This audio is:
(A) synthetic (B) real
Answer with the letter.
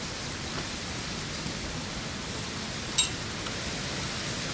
B